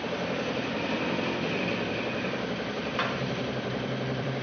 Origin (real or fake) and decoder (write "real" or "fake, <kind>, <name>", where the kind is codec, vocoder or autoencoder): fake, vocoder, BigVGAN v2